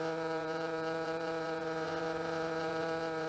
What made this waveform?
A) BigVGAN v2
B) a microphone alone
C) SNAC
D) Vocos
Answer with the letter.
D